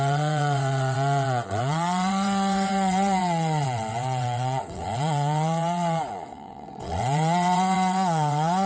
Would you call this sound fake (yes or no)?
yes